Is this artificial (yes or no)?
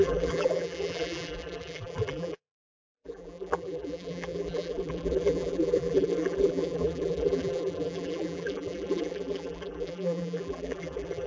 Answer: yes